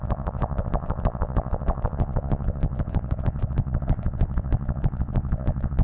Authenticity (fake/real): fake